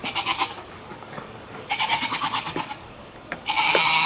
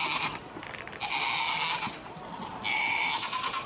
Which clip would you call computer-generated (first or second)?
first